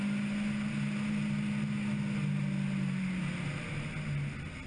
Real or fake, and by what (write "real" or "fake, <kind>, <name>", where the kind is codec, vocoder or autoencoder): real